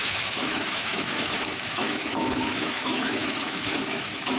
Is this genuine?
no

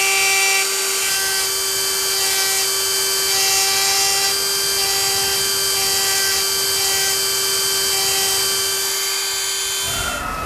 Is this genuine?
yes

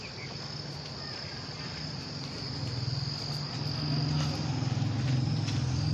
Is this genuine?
yes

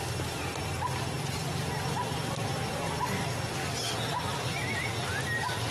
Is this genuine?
yes